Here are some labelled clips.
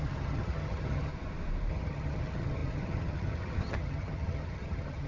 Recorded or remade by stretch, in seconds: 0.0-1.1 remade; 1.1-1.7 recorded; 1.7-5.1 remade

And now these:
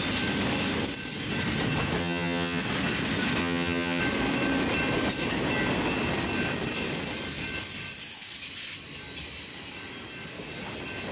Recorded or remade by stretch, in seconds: 0.0-2.0 recorded; 2.0-2.6 remade; 2.6-3.4 recorded; 3.4-4.0 remade; 4.0-11.1 recorded

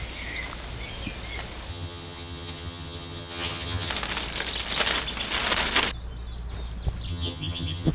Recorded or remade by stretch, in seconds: 0.0-1.7 recorded; 1.7-3.9 remade; 3.9-7.1 recorded; 7.1-7.9 remade

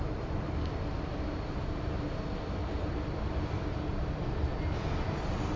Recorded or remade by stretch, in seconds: 0.0-5.6 recorded

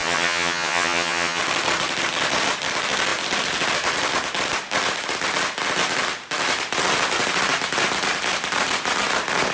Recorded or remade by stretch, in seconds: 0.0-1.4 remade; 1.4-9.5 recorded

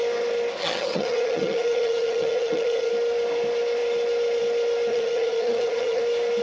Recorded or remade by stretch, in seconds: 0.0-0.6 recorded; 0.6-2.9 remade; 2.9-4.9 recorded; 4.9-6.0 remade; 6.0-6.4 recorded

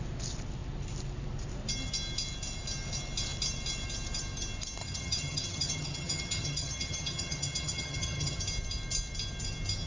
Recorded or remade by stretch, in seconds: 0.0-4.8 recorded; 4.8-8.4 remade; 8.4-9.9 recorded